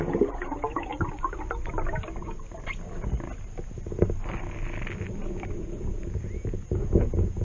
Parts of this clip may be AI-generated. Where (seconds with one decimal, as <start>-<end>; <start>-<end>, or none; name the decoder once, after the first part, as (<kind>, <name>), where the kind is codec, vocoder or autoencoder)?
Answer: 0.0-0.9 (vocoder, Vocos); 5.3-7.4